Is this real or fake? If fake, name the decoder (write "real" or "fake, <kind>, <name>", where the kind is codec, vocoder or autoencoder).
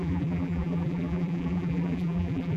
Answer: fake, vocoder, BigVGAN v2